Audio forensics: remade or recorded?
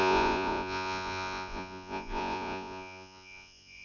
remade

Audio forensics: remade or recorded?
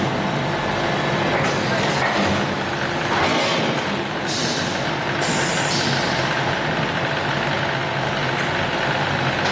recorded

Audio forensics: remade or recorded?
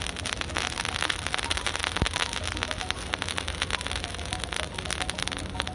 recorded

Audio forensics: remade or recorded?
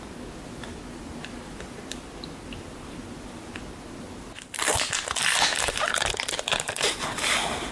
recorded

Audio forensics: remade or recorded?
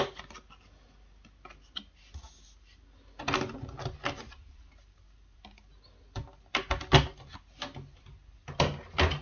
recorded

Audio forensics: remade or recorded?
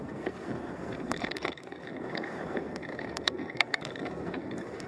remade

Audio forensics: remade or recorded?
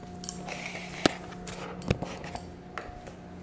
recorded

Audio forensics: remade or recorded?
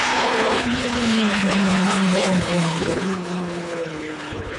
remade